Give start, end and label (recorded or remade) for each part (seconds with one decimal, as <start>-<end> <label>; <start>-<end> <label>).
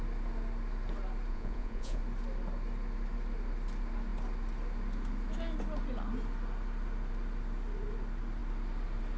0.0-1.3 recorded; 1.3-2.0 remade; 2.0-9.2 recorded